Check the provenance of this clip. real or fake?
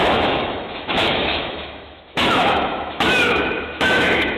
fake